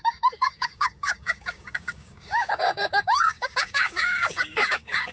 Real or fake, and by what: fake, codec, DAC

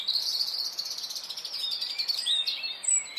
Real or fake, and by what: real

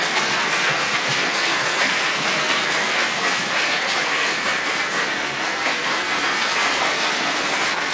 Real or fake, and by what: fake, codec, SNAC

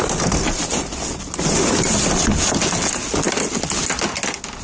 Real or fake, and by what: real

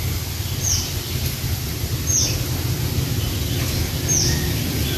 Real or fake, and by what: real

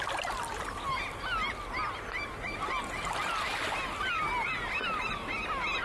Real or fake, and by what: real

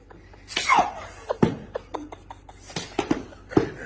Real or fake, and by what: real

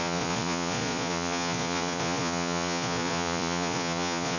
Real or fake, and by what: fake, vocoder, Vocos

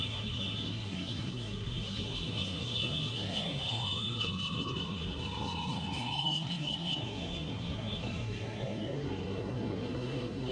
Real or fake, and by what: fake, codec, SNAC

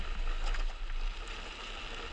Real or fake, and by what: real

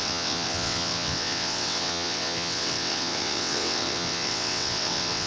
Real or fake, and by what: fake, vocoder, WaveNeXt